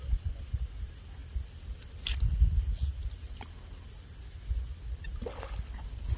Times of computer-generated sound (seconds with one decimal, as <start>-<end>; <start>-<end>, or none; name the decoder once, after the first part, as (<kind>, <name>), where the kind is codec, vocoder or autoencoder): none